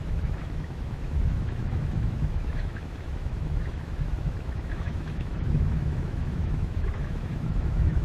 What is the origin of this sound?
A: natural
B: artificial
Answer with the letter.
B